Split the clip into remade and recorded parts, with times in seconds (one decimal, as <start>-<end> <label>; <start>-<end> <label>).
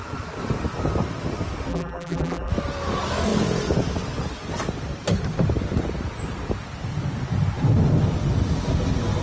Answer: 0.0-1.7 recorded; 1.7-2.5 remade; 2.5-9.2 recorded